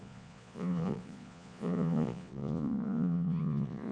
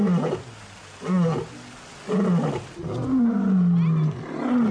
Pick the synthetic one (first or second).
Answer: first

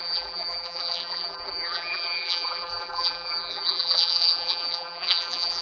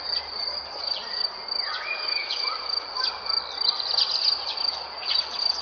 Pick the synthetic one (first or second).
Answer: first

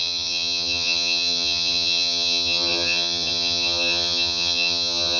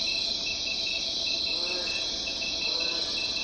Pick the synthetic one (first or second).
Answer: first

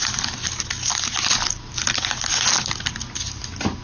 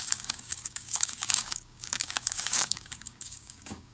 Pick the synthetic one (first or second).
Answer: second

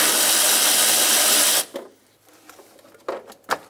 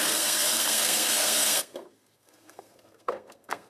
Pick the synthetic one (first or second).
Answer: second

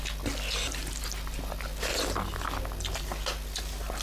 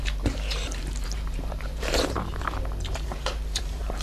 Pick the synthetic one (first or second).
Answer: second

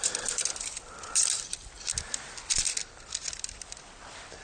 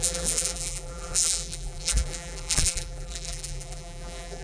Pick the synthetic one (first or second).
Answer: second